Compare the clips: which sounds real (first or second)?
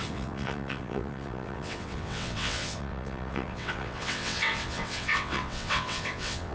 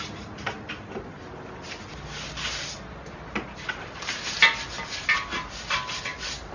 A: second